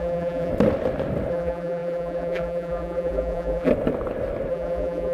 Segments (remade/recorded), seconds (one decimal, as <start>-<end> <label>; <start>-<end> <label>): 0.0-0.5 remade; 0.5-1.3 recorded; 1.3-3.7 remade; 3.7-4.5 recorded; 4.5-5.1 remade